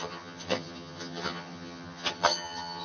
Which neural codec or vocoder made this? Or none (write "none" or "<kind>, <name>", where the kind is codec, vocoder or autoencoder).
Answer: vocoder, HiFi-GAN